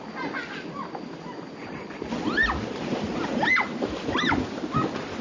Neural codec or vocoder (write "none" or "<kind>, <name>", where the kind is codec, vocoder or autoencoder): none